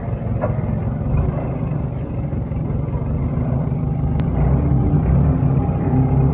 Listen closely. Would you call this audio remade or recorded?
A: recorded